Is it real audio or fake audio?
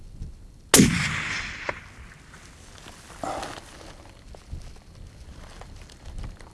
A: real